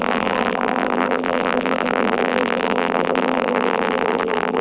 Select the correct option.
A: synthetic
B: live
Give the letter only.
A